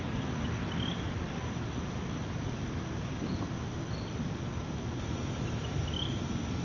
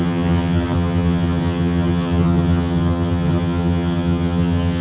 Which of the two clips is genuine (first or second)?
first